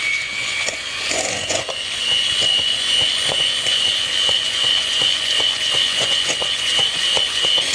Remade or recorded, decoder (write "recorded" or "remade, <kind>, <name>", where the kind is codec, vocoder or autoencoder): remade, vocoder, Vocos